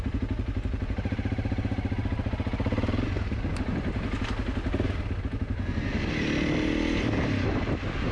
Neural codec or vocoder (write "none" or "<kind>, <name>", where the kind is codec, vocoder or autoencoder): none